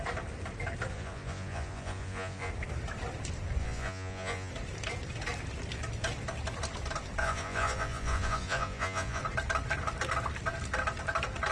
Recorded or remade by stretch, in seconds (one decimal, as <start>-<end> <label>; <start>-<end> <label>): 0.0-0.9 recorded; 0.9-2.5 remade; 2.5-3.6 recorded; 3.6-4.5 remade; 4.5-7.2 recorded; 7.2-9.2 remade; 9.2-11.5 recorded